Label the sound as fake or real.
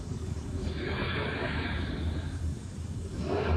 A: fake